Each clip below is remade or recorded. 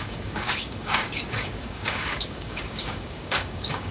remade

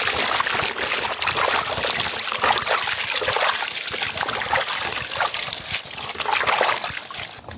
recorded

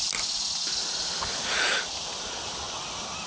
recorded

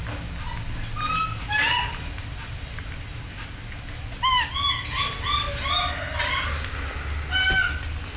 recorded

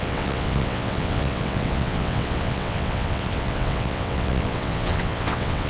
remade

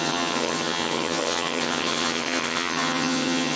remade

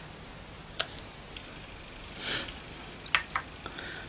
recorded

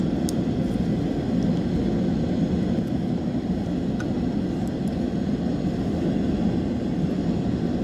recorded